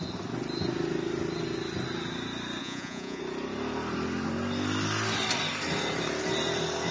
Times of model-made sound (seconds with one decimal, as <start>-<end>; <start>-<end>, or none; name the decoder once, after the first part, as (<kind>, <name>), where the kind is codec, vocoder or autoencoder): 2.6-3.2 (vocoder, Vocos)